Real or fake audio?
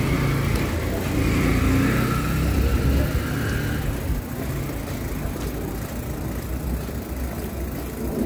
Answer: real